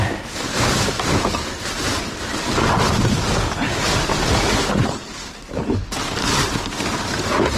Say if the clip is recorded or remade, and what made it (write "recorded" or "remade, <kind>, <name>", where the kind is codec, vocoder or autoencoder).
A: recorded